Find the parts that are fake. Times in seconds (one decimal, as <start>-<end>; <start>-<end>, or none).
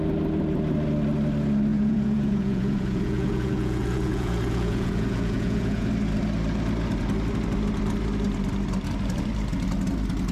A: 1.7-5.9